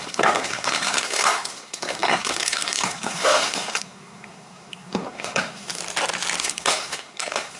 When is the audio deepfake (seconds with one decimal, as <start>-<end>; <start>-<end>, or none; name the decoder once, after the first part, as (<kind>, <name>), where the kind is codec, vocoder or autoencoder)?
0.0-5.8 (codec, SNAC); 6.4-7.6